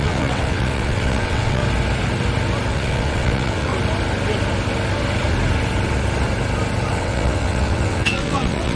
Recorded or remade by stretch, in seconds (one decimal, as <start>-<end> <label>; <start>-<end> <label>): 0.0-1.6 remade; 1.6-2.7 recorded; 2.7-3.7 remade; 3.7-6.9 recorded; 6.9-8.8 remade